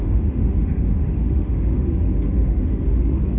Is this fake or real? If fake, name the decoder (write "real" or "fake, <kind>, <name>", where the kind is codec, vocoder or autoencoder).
fake, autoencoder, DAC-VAE